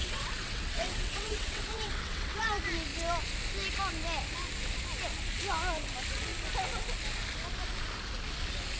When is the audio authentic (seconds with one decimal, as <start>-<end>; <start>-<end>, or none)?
2.5-8.8

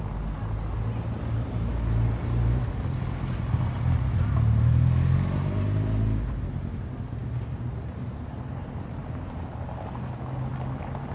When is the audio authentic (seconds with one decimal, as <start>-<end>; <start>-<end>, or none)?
0.0-11.1

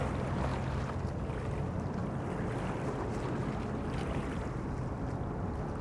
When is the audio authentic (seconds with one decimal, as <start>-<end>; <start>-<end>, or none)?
0.0-5.8